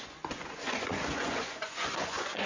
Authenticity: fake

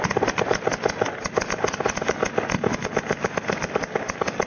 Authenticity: real